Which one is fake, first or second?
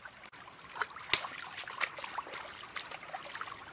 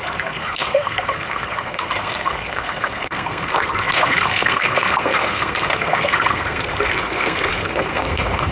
second